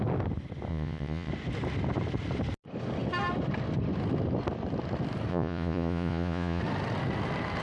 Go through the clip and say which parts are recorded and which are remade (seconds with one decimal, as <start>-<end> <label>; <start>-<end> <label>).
0.0-0.7 recorded; 0.7-1.3 remade; 1.3-5.3 recorded; 5.3-6.6 remade; 6.6-7.6 recorded